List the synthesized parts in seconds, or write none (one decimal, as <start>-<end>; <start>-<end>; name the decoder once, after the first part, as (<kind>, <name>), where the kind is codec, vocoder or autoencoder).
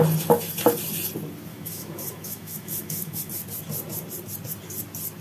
1.5-3.3 (autoencoder, DAC-VAE)